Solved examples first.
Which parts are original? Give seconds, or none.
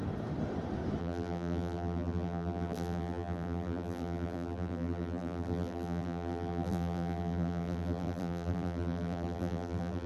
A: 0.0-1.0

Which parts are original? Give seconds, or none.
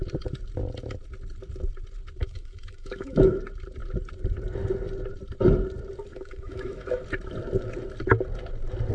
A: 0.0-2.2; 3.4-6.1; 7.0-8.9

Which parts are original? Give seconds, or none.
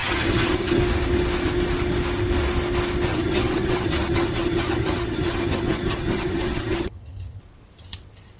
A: 0.8-3.1; 7.4-8.4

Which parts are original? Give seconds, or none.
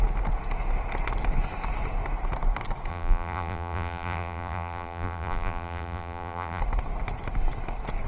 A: 0.0-2.9; 6.6-8.1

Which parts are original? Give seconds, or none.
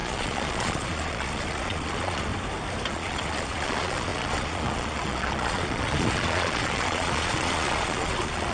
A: 2.3-2.9